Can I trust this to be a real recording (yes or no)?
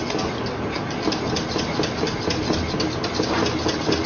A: yes